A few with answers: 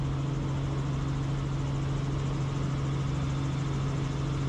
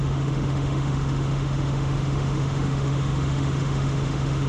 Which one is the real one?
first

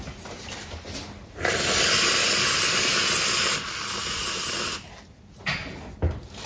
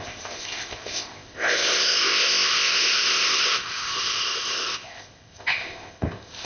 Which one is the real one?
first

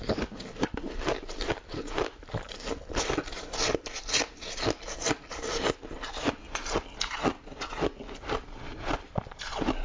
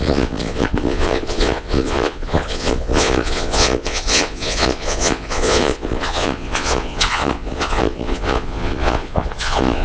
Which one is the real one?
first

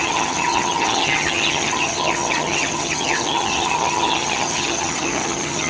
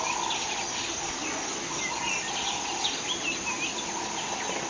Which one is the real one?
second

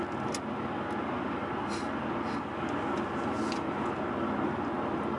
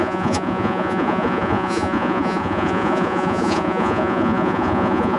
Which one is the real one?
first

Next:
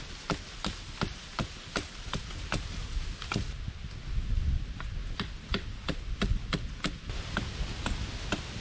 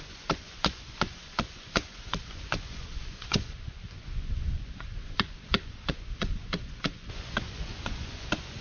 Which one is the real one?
first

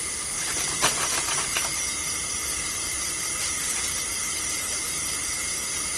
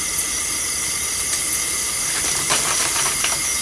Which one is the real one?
second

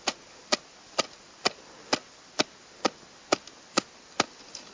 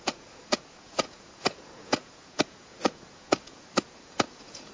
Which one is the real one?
first